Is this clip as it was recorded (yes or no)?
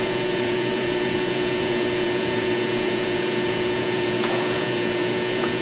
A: no